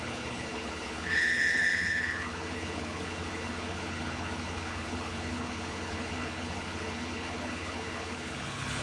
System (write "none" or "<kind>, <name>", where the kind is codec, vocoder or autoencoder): codec, HILCodec